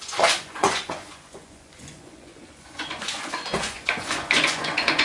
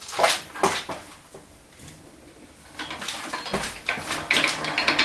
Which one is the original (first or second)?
second